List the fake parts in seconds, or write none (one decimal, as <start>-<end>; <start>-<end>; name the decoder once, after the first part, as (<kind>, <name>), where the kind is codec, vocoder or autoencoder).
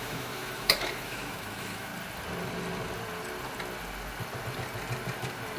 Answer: 0.0-1.9 (autoencoder, DAC-VAE)